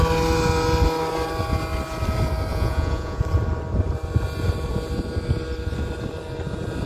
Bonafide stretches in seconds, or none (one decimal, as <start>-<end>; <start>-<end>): 0.0-2.5; 3.2-6.9